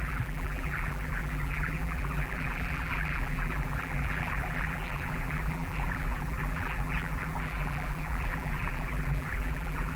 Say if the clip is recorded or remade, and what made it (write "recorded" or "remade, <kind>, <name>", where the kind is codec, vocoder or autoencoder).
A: remade, vocoder, BigVGAN v2